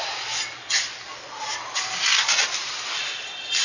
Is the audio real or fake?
real